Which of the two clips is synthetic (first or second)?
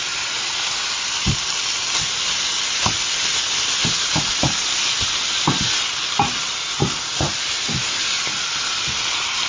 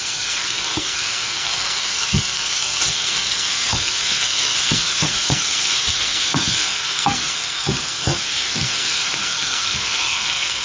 second